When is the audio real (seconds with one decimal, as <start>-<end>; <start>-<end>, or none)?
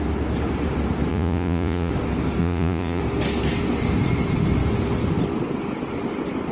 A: 0.0-1.1; 1.9-2.4; 3.0-6.5